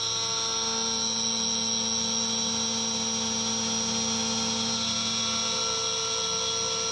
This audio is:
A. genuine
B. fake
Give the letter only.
A